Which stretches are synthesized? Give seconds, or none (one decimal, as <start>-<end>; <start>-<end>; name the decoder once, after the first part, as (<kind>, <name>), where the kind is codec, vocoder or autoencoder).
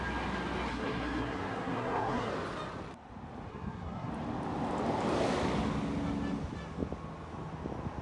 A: 0.7-2.3 (codec, SNAC); 3.5-4.1